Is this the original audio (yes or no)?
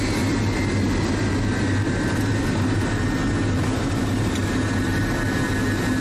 yes